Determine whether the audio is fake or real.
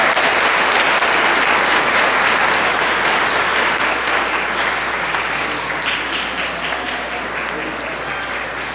real